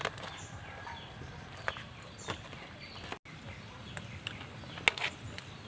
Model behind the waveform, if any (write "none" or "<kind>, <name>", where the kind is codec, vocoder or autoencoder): none